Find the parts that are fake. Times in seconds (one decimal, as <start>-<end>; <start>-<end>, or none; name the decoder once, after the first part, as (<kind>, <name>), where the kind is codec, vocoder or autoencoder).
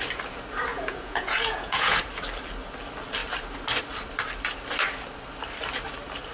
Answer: 0.7-2.0 (vocoder, Vocos)